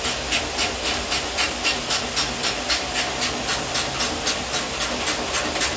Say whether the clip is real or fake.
real